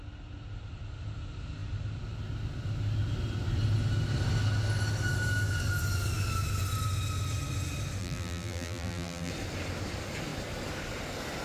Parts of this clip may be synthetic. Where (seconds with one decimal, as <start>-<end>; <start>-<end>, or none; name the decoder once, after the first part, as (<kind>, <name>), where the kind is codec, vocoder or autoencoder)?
8.0-9.3 (vocoder, BigVGAN v2)

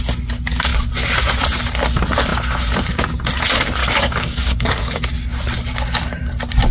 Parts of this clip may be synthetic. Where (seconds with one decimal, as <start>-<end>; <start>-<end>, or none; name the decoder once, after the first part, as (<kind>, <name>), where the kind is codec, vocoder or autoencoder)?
3.8-5.0 (codec, DAC)